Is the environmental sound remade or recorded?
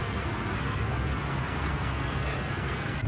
remade